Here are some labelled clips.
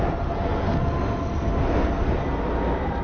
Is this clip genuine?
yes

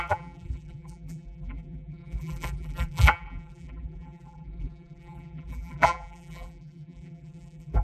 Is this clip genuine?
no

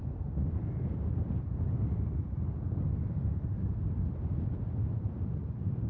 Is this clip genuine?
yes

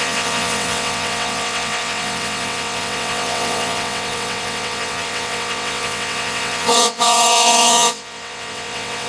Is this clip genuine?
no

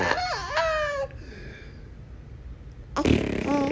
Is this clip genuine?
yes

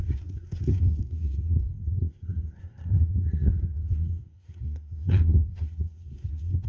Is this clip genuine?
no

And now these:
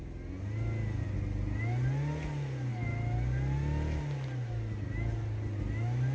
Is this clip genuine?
yes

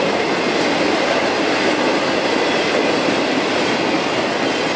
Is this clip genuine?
yes